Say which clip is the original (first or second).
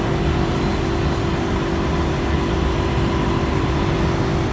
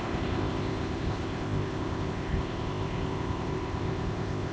first